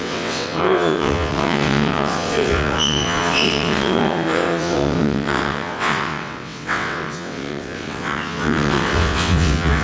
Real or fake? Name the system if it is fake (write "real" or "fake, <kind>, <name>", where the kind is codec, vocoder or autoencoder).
fake, vocoder, WaveNeXt